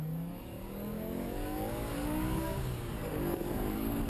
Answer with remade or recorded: remade